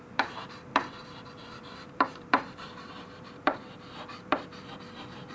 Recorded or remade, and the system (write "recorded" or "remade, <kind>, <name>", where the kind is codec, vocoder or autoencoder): remade, vocoder, BigVGAN v2